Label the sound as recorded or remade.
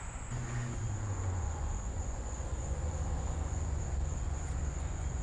remade